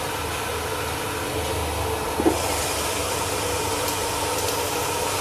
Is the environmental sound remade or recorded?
recorded